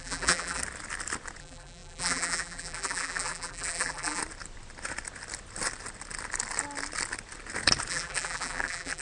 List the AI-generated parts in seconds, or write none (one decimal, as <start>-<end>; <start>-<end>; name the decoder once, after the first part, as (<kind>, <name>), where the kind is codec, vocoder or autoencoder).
0.0-0.6 (vocoder, BigVGAN v2); 1.4-4.2; 7.9-9.0